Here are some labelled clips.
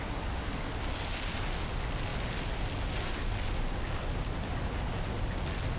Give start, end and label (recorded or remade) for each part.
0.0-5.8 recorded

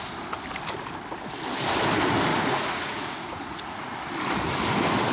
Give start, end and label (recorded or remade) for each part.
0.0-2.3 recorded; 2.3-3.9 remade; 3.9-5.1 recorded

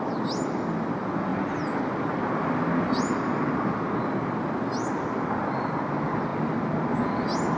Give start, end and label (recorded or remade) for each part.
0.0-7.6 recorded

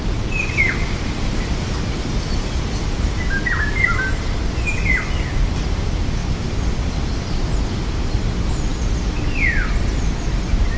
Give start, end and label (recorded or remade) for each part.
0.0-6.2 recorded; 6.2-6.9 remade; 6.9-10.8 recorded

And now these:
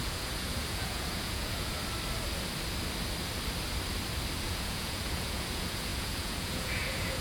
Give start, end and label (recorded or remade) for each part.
0.0-1.8 remade; 1.8-4.4 recorded; 4.4-7.2 remade